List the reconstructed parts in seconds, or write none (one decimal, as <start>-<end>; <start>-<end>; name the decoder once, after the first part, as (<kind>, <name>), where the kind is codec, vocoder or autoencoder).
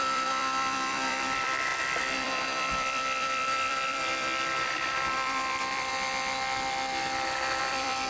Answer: 0.0-5.9 (vocoder, BigVGAN v2); 7.6-8.1